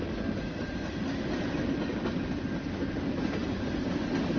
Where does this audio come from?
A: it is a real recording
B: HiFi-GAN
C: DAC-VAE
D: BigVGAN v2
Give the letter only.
A